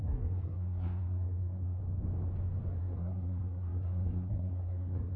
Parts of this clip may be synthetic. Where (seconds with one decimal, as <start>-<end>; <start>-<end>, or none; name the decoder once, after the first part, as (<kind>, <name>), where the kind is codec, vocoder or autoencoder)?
0.0-1.8 (codec, SNAC); 2.8-5.2